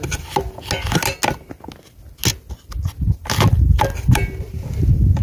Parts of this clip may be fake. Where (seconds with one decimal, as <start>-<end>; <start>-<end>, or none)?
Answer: none